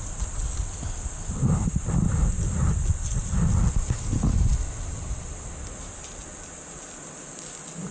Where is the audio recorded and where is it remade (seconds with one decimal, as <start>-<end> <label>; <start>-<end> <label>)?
0.0-7.9 recorded